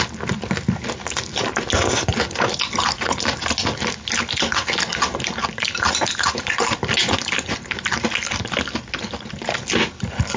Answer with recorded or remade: recorded